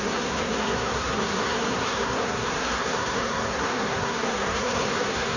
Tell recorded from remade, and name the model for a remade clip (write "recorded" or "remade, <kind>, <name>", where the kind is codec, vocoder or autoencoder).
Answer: remade, codec, SNAC